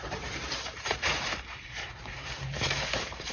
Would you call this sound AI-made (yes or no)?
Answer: yes